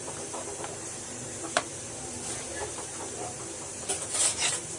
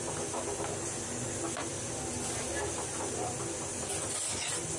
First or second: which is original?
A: second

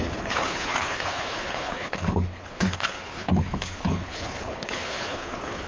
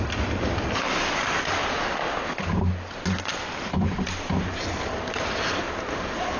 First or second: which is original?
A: second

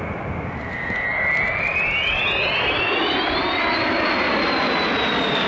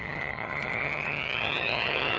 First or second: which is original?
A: first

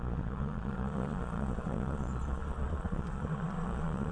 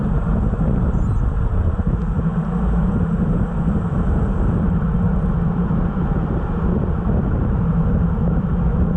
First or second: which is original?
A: second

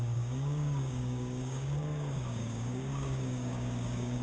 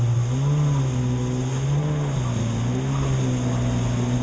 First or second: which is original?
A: second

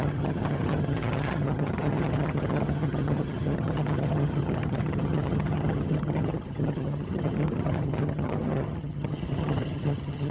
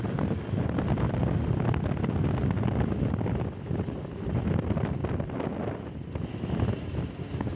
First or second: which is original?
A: second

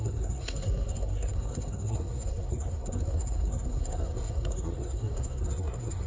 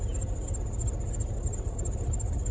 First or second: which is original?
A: second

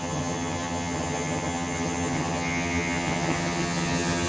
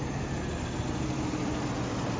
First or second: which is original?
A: second